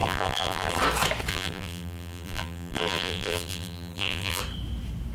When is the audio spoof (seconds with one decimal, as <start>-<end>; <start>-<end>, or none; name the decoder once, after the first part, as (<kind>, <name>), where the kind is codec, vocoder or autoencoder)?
0.0-0.8 (vocoder, BigVGAN v2); 1.3-4.4